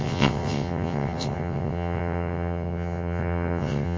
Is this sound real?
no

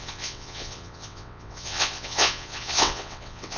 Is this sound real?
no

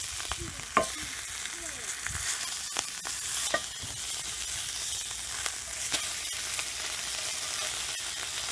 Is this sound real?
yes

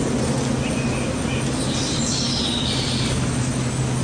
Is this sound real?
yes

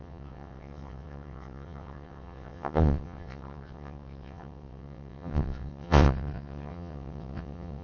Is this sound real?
no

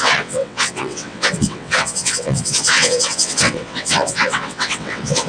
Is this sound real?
no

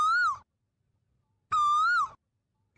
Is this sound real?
yes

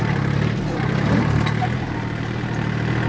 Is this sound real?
yes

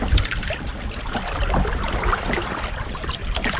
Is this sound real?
yes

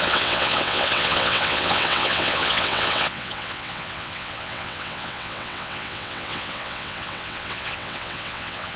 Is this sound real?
no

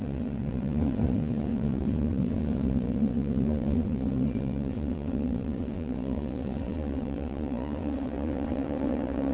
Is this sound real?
no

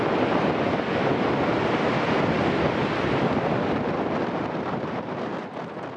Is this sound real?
yes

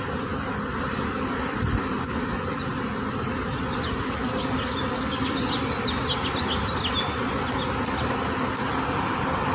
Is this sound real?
yes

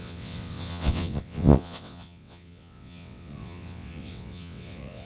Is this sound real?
no